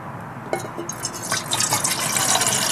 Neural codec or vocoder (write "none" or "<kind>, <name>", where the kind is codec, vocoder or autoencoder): none